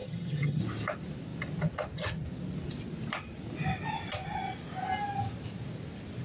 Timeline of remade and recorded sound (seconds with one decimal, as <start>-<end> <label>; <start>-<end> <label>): 0.0-0.6 remade; 0.6-6.2 recorded